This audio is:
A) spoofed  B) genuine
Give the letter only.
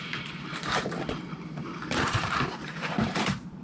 A